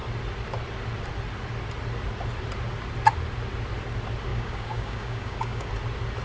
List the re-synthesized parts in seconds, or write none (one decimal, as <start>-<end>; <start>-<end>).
4.3-5.7